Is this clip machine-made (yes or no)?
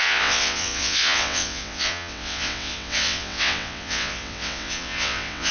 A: yes